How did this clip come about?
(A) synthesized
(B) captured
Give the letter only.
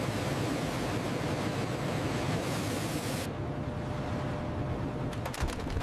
B